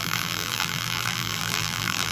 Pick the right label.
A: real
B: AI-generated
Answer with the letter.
B